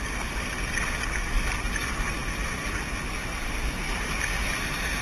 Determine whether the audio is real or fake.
real